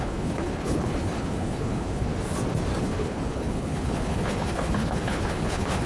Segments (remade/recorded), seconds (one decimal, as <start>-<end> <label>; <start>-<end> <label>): 0.0-2.1 remade; 2.1-2.8 recorded; 2.8-5.9 remade